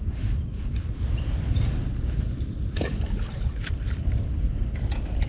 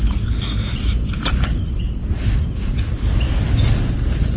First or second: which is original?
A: second